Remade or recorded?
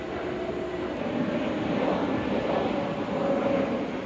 recorded